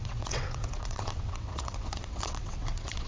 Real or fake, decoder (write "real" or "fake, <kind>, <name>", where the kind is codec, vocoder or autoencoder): fake, vocoder, WaveNeXt